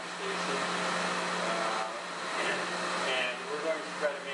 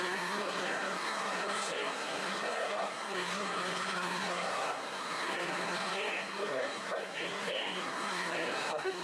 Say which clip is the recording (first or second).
first